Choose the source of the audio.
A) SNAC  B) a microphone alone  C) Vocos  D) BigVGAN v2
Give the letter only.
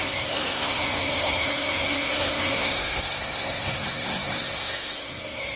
A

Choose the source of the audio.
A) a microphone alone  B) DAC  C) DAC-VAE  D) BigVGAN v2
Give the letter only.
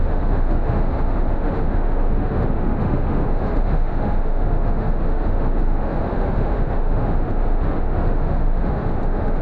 C